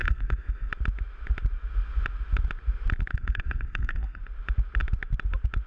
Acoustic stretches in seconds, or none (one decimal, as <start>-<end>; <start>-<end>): 0.7-3.1; 4.2-5.7